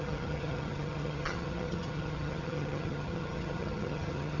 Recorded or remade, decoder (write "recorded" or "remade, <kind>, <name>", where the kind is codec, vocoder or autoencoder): remade, vocoder, HiFi-GAN